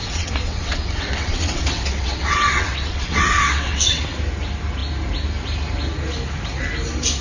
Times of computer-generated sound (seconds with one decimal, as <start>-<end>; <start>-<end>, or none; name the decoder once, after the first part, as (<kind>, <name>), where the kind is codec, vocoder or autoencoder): 0.0-4.0 (vocoder, WaveNeXt)